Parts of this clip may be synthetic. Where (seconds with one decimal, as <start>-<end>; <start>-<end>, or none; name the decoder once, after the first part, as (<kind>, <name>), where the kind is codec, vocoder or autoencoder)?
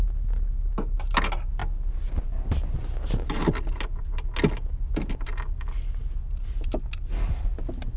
none